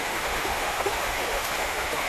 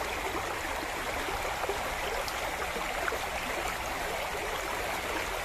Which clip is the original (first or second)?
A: second